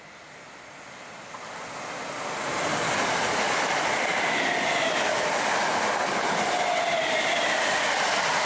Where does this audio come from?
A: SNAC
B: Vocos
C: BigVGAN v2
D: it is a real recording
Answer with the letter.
D